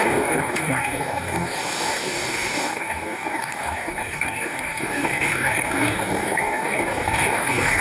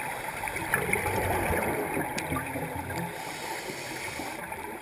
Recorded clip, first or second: second